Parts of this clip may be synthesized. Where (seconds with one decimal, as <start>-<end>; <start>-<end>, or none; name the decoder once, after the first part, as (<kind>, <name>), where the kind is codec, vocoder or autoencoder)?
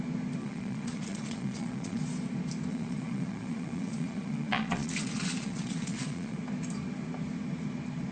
0.4-2.0 (vocoder, Vocos); 2.7-6.4